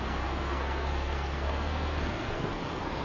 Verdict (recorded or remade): remade